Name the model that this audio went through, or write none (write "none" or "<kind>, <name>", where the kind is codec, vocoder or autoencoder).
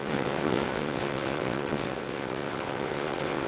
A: vocoder, WaveNeXt